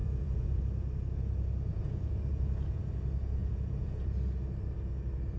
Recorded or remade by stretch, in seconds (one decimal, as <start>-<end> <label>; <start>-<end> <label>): 0.0-0.6 remade; 0.6-1.7 recorded; 1.7-2.8 remade; 2.8-3.4 recorded; 3.4-4.0 remade; 4.0-5.4 recorded